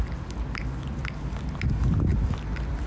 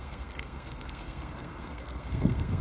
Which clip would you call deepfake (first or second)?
second